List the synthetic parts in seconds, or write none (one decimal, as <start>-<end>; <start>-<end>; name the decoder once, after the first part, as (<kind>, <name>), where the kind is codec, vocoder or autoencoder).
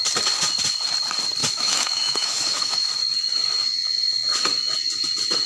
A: 1.4-2.9 (autoencoder, DAC-VAE)